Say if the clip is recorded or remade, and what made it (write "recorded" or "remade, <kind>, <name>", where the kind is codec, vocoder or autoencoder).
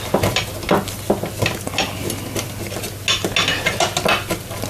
recorded